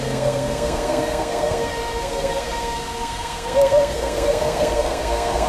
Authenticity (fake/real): fake